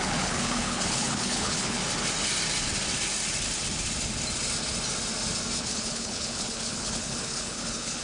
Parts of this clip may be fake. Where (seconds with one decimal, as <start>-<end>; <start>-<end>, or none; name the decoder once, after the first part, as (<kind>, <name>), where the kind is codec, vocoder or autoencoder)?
0.0-1.8 (codec, HILCodec); 5.6-8.0